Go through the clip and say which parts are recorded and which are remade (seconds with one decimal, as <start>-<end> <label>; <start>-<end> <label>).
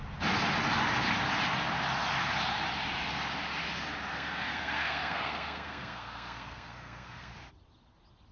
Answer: 0.0-4.1 recorded; 4.1-7.3 remade; 7.3-8.3 recorded